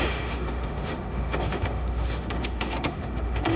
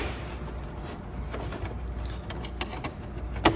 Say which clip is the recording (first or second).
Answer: second